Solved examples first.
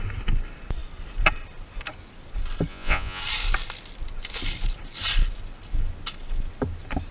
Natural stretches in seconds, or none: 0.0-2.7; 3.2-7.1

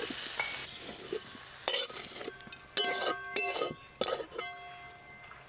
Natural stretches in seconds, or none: 0.0-5.5

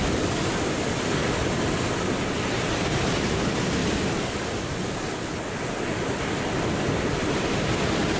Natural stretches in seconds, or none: 3.8-6.2

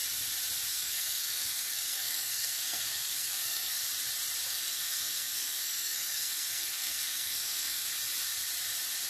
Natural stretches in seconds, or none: 0.0-0.7; 3.8-4.5; 7.9-9.1

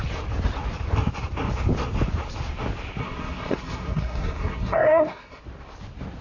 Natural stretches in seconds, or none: 0.0-3.0; 5.4-6.2

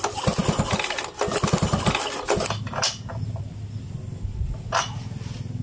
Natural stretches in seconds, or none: 0.0-5.6

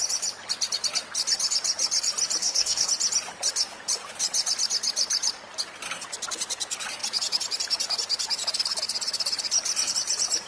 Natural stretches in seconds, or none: 0.0-2.4; 2.9-10.5

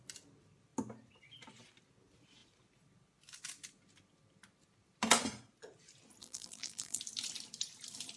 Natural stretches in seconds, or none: 0.0-6.2; 7.0-8.2